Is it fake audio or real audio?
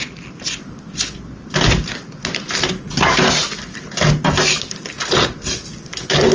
real